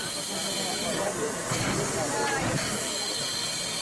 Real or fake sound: real